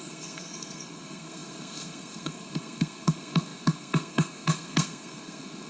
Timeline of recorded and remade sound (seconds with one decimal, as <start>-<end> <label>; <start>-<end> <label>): 0.0-5.7 remade